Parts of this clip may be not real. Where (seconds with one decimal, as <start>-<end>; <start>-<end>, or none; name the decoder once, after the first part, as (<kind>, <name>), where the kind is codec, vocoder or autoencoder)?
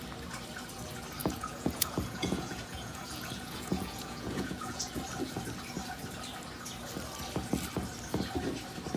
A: 1.2-4.9 (vocoder, Vocos)